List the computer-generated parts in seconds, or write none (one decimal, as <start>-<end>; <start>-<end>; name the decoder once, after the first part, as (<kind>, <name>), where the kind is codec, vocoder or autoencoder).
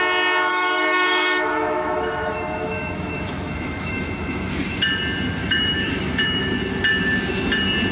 0.5-4.5 (autoencoder, DAC-VAE); 5.4-6.6